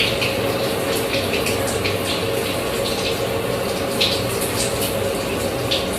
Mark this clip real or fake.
real